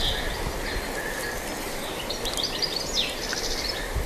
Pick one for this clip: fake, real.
real